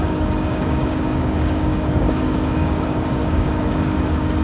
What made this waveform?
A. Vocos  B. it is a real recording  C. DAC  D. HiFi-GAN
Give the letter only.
C